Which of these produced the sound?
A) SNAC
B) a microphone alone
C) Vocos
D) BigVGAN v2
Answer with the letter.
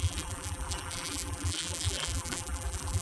D